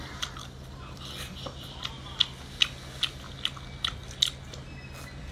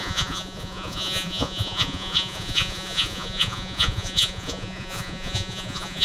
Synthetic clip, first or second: second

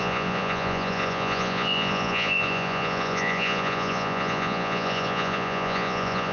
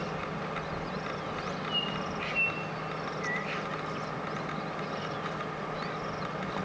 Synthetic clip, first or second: first